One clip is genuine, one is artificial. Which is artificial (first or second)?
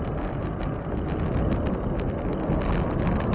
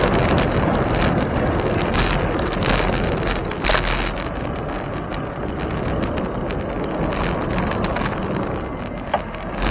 first